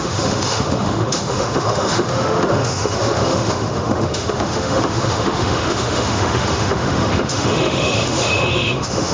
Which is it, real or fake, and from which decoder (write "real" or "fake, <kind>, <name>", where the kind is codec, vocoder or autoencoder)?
fake, autoencoder, DAC-VAE